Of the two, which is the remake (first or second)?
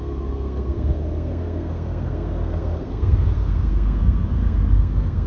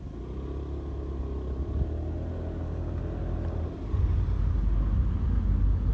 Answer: first